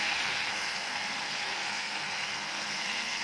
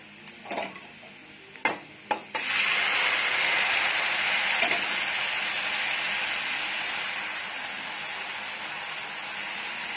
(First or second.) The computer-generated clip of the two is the first